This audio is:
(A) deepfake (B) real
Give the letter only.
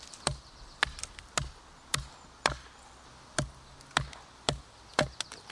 B